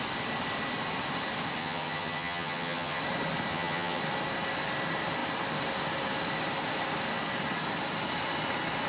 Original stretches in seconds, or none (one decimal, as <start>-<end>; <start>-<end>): 0.0-1.6; 3.0-3.5; 4.0-8.9